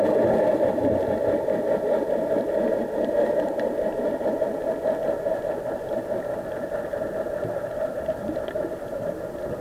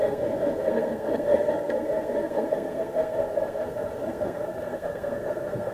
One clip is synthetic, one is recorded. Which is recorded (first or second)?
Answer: first